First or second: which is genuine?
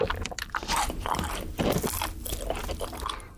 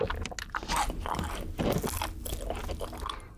second